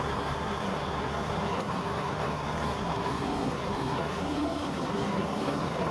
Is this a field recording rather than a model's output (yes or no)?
no